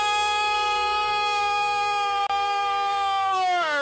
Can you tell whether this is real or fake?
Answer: fake